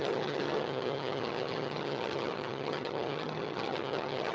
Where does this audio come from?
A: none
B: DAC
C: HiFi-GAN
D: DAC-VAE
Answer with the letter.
C